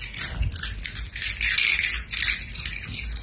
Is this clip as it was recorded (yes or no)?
yes